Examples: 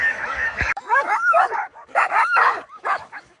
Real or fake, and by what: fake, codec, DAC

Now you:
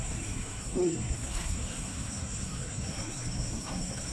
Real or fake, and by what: fake, codec, SNAC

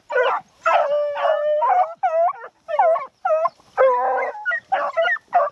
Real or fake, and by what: real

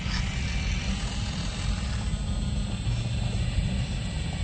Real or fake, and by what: real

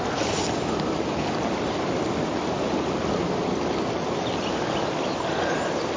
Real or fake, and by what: real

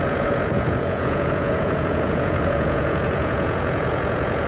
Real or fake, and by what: fake, vocoder, Vocos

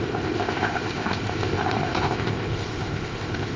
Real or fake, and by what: fake, codec, ZipCodec